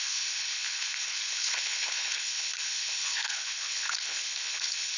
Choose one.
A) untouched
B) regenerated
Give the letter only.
B